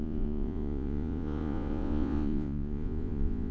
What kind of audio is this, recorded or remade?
remade